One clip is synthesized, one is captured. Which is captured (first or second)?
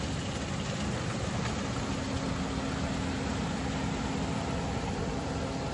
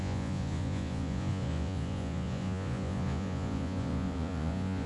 first